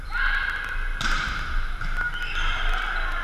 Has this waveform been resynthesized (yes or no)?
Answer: no